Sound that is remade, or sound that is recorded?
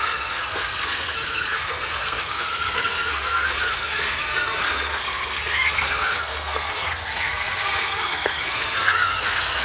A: remade